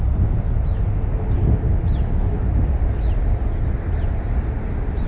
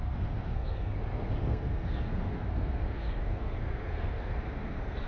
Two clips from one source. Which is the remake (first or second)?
second